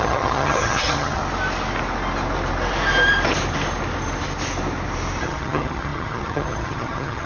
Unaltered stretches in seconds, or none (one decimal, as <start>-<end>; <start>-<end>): 1.2-5.2